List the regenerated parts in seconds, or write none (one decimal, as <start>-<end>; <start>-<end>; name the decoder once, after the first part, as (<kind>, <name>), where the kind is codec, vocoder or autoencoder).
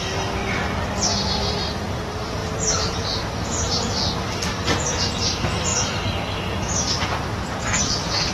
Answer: 0.0-0.4 (vocoder, BigVGAN v2); 1.2-5.7; 7.8-8.3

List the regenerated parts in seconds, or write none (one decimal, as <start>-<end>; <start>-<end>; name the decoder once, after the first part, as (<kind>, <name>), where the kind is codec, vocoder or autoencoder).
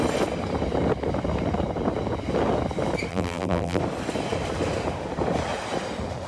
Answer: 3.1-3.8 (vocoder, BigVGAN v2)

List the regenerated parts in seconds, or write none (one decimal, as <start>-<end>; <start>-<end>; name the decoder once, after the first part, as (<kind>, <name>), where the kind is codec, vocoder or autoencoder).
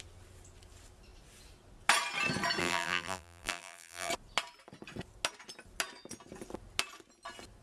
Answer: 2.6-4.1 (vocoder, BigVGAN v2)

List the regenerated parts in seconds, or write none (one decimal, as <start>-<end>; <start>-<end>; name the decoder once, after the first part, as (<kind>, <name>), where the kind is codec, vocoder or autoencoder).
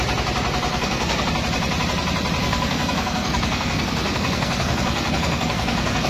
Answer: 0.7-1.3 (codec, SNAC); 2.4-6.1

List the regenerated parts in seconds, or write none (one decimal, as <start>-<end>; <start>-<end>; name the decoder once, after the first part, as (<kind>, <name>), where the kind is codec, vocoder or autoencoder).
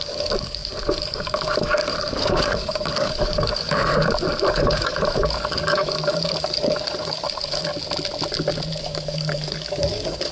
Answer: 0.0-3.9 (codec, DAC); 4.5-7.7; 8.8-10.3